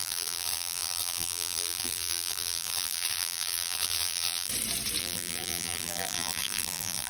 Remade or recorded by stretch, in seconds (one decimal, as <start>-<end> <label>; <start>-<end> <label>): 0.0-4.5 remade; 4.5-5.0 recorded; 5.0-7.1 remade